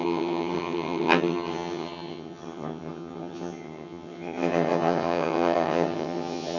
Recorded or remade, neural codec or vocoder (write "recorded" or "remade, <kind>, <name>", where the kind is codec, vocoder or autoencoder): remade, vocoder, HiFi-GAN